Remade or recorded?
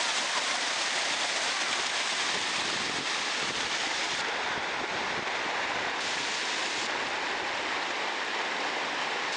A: recorded